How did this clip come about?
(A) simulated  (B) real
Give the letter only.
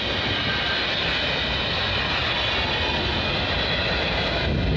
B